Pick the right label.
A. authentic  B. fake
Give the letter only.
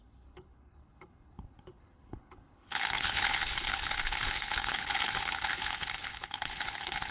B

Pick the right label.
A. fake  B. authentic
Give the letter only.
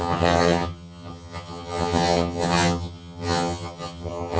A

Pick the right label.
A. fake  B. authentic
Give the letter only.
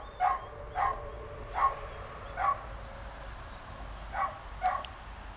B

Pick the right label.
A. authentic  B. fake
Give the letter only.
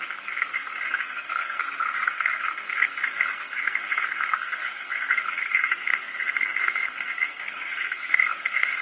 B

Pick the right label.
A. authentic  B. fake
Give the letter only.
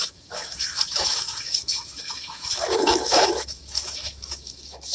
B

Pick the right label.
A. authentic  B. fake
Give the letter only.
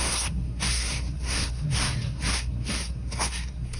B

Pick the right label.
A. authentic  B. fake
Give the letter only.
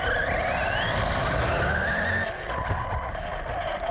A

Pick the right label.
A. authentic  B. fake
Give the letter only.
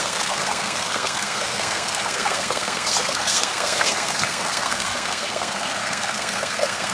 B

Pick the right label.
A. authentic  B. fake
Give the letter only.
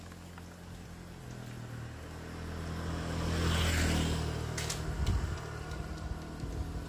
A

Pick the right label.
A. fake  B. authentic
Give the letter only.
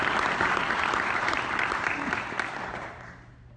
B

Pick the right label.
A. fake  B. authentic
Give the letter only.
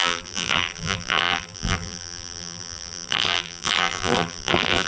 A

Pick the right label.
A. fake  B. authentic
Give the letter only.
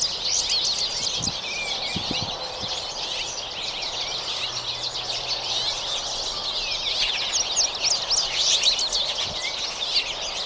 B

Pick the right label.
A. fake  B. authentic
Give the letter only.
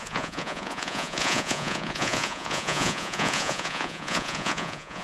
A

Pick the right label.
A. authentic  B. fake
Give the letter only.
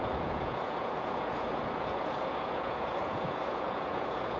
B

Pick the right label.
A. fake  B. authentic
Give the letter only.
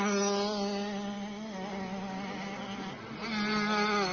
B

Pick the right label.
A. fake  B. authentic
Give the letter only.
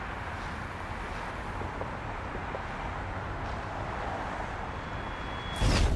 B